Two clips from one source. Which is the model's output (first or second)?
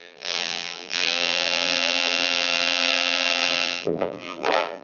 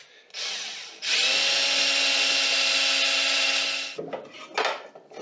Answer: first